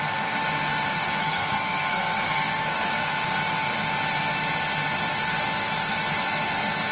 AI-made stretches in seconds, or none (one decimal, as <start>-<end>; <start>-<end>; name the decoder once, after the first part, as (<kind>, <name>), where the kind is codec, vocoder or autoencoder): 1.2-2.9 (codec, SNAC)